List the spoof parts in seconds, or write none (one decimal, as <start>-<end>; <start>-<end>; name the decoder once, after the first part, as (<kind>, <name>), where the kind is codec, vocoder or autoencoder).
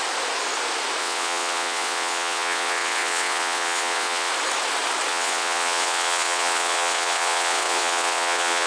1.0-4.3 (vocoder, WaveNeXt); 5.1-8.7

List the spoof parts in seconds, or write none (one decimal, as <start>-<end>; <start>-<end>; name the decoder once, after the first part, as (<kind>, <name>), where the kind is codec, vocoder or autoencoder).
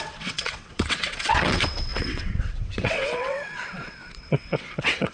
0.0-5.1 (vocoder, WaveNeXt)